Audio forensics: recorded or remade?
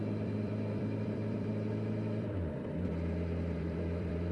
remade